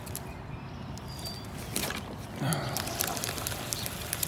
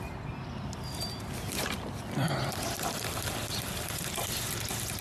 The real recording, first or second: second